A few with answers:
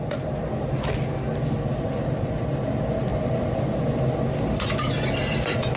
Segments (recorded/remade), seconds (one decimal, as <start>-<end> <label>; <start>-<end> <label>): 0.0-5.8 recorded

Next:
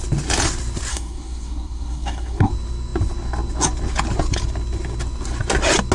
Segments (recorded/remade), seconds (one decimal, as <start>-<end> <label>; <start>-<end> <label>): 0.0-0.9 recorded; 0.9-2.5 remade; 2.5-5.9 recorded

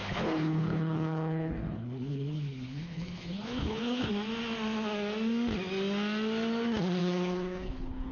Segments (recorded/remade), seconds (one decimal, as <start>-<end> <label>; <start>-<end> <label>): 0.0-4.1 remade; 4.1-7.0 recorded; 7.0-8.1 remade

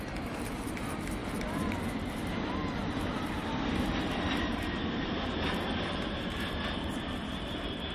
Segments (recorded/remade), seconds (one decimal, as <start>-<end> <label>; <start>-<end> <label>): 0.0-7.9 remade

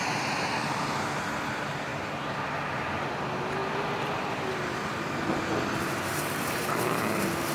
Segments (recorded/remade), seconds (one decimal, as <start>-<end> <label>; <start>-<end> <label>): 0.0-7.5 recorded

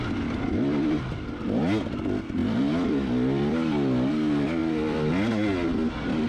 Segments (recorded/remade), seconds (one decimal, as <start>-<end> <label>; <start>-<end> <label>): 0.0-2.4 recorded; 2.4-4.1 remade; 4.1-4.6 recorded; 4.6-5.1 remade; 5.1-6.3 recorded

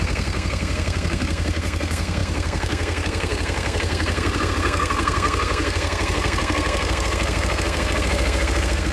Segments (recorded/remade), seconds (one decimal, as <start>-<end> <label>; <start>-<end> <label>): 0.0-8.9 remade

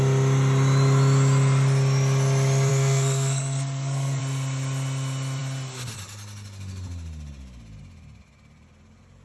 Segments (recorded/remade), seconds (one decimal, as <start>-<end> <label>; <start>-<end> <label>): 0.0-2.7 recorded; 2.7-4.2 remade; 4.2-9.2 recorded